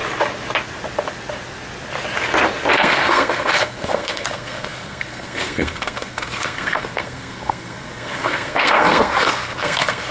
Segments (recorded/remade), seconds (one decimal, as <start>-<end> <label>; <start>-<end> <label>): 0.0-2.7 recorded; 2.7-10.1 remade